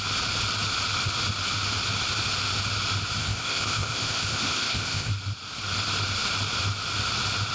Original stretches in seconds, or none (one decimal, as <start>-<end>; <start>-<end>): 0.0-3.2; 5.1-7.5